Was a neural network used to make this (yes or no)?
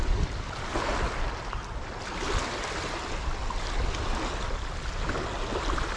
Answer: no